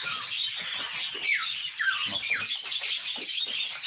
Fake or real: real